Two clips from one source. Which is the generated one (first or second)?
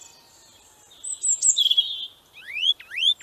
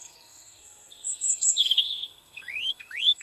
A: second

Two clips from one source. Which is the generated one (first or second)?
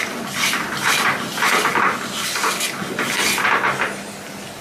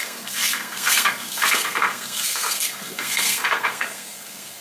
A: second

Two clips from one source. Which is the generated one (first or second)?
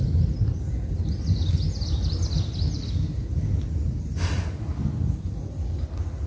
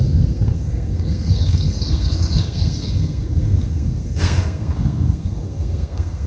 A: second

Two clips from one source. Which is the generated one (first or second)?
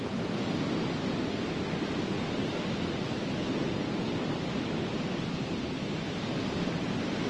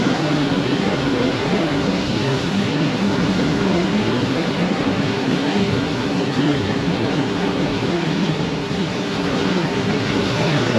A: second